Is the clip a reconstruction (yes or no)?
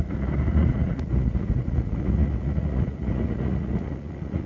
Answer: yes